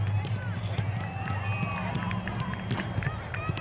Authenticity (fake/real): real